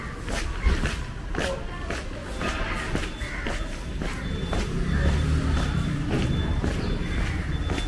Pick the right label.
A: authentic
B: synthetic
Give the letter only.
A